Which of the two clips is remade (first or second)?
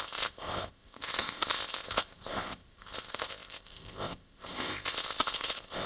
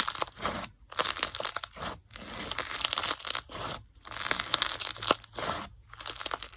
first